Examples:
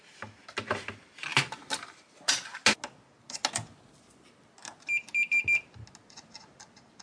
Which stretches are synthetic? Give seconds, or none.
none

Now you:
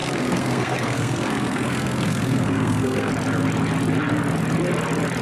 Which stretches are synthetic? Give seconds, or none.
0.0-3.1

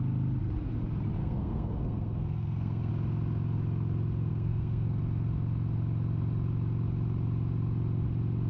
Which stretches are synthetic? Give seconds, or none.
1.2-2.9; 4.3-5.0

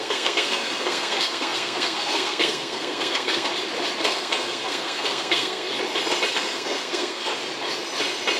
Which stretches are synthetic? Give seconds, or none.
0.0-3.5; 4.0-5.7; 6.3-7.3

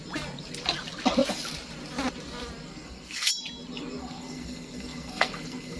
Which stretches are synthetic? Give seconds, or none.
2.7-3.3; 4.0-5.8